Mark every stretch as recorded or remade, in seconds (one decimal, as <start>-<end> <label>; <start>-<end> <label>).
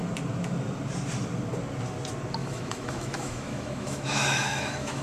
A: 0.0-2.4 recorded; 2.4-5.0 remade